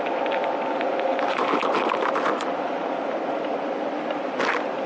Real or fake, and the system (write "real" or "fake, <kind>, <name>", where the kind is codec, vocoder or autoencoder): real